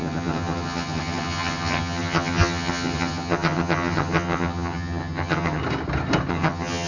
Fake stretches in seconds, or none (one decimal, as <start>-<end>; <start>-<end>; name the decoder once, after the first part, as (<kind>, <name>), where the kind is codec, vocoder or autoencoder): 0.0-5.6 (vocoder, HiFi-GAN); 6.3-6.9